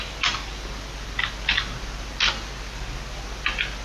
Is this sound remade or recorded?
recorded